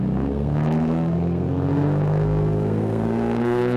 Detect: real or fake fake